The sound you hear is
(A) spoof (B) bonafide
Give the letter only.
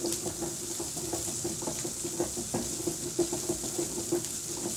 B